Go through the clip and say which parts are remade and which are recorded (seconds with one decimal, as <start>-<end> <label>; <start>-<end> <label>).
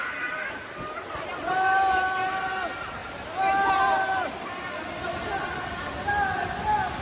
0.0-7.0 recorded